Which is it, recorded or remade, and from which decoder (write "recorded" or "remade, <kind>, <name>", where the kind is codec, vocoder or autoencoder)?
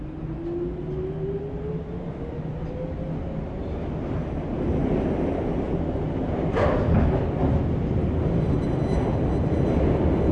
recorded